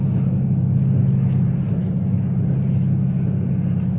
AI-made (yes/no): no